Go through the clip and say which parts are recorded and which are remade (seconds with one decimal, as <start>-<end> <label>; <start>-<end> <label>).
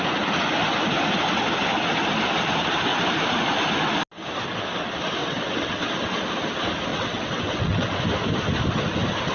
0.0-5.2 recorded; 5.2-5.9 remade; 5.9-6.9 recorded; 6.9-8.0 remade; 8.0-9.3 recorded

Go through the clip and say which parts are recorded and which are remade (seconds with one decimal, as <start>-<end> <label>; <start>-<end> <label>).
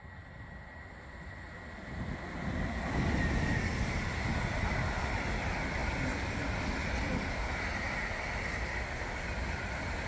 0.0-10.1 recorded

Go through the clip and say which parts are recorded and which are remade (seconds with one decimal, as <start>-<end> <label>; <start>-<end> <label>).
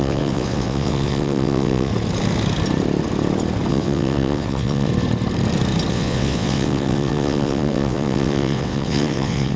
0.0-1.9 remade; 1.9-3.7 recorded; 3.7-4.9 remade; 4.9-5.9 recorded; 5.9-9.6 remade